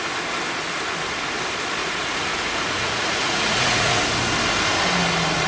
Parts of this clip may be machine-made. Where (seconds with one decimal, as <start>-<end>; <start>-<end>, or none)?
1.8-4.0